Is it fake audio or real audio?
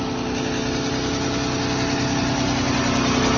real